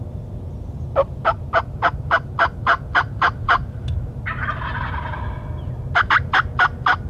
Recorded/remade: recorded